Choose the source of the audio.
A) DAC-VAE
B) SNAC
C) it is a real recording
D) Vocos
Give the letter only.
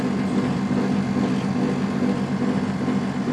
C